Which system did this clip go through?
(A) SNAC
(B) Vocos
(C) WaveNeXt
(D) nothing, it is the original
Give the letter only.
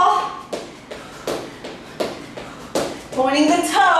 D